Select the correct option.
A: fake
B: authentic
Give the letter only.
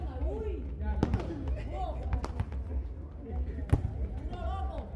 B